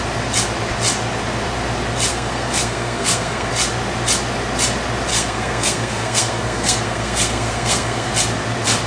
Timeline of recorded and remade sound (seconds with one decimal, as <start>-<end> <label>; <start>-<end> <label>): 0.0-2.1 recorded; 2.1-3.5 remade; 3.5-5.1 recorded; 5.1-8.1 remade; 8.1-8.9 recorded